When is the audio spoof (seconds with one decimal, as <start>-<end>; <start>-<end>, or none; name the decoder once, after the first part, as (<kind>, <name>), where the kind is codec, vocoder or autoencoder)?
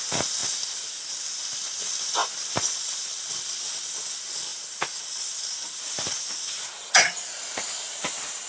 2.2-3.6 (vocoder, BigVGAN v2)